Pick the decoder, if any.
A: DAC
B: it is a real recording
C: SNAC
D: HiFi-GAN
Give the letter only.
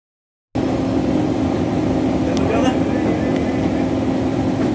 B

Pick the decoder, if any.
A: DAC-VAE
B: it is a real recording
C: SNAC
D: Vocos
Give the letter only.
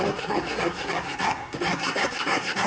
C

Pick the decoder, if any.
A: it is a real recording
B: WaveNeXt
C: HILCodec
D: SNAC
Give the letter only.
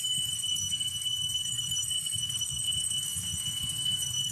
D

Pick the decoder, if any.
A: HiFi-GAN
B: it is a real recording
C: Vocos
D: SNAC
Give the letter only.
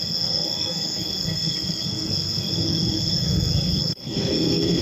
D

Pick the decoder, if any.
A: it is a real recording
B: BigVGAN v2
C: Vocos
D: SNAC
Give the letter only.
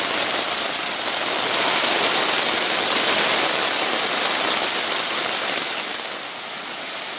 A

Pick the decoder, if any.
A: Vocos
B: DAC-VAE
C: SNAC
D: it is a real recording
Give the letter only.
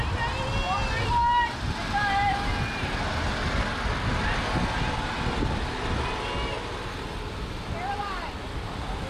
D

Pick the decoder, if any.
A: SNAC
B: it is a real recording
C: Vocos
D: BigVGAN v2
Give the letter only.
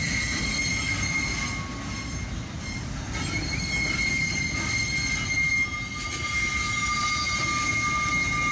B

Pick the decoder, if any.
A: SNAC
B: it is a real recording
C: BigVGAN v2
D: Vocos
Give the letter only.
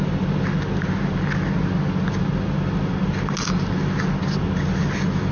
B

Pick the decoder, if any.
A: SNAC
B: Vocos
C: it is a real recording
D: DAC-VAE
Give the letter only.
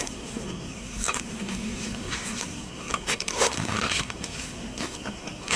A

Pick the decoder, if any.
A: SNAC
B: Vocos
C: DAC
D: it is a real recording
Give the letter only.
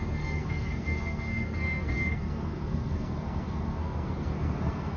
A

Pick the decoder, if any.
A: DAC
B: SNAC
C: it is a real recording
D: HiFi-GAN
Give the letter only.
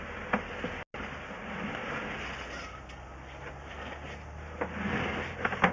C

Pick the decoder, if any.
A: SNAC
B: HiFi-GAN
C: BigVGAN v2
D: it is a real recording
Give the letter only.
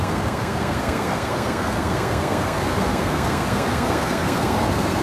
A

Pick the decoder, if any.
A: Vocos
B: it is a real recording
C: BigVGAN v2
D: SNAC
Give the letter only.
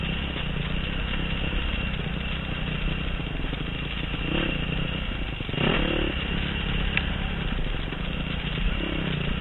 B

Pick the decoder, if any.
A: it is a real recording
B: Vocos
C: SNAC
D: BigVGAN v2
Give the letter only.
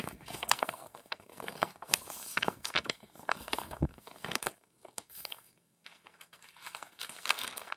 C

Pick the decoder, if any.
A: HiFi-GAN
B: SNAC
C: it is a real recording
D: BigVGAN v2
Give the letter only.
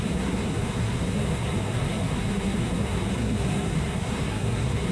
B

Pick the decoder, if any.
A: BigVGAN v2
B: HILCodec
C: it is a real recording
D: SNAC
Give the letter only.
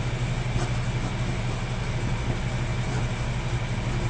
C